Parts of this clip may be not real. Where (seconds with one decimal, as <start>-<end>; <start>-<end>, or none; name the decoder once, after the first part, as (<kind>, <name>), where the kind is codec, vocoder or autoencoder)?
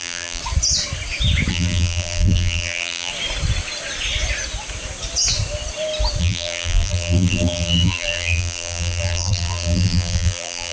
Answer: 0.0-0.4 (vocoder, BigVGAN v2); 1.5-3.1; 6.2-10.7